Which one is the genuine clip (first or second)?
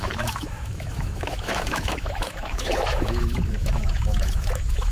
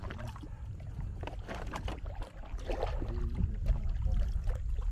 second